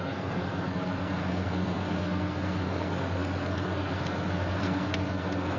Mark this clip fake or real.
fake